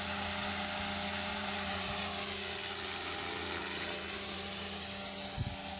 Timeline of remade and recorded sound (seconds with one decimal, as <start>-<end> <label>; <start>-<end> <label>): 0.0-1.3 recorded; 1.3-2.0 remade; 2.0-3.6 recorded; 3.6-4.5 remade; 4.5-5.8 recorded

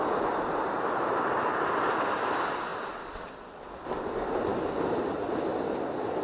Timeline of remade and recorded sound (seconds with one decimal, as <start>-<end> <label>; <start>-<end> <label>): 0.0-2.7 recorded; 2.7-3.9 remade; 3.9-6.2 recorded

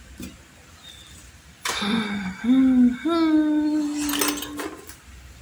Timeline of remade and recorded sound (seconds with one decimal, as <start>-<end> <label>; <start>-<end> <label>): 0.0-5.4 recorded